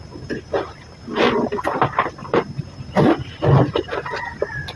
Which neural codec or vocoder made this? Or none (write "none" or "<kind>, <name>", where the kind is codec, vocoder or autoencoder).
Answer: none